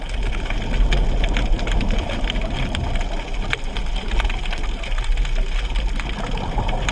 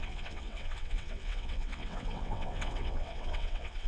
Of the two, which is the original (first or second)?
first